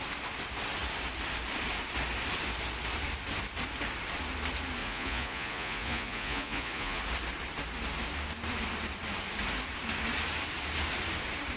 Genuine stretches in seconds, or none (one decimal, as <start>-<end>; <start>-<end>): 0.0-4.8; 7.0-11.6